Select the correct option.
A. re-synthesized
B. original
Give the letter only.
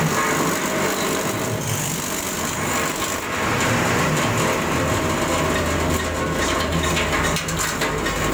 B